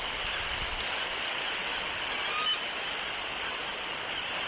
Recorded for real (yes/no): yes